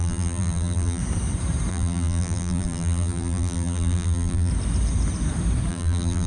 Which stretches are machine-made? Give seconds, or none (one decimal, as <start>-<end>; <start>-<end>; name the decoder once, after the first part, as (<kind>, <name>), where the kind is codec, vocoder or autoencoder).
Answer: 0.0-1.0 (vocoder, BigVGAN v2); 1.7-4.5; 5.7-6.3